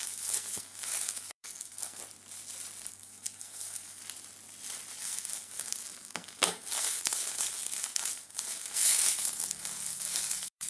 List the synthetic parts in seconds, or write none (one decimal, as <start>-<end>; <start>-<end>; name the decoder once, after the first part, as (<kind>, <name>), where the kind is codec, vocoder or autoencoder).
0.0-2.0 (codec, SNAC); 2.9-4.0; 5.0-10.7